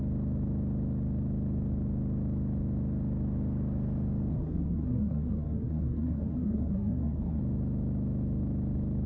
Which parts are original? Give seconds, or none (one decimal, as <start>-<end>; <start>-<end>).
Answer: 0.0-4.3; 7.4-9.1